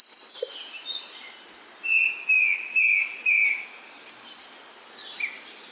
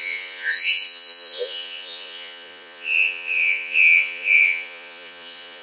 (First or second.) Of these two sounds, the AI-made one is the second